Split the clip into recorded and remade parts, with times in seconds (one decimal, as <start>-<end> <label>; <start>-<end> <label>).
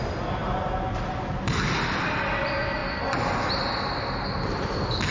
0.0-5.1 recorded